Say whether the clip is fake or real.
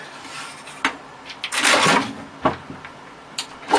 real